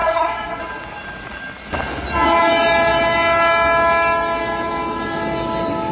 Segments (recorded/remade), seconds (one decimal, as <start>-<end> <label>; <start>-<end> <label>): 0.0-0.6 remade; 0.6-5.9 recorded